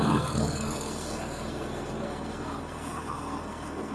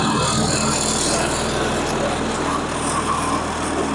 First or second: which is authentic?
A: second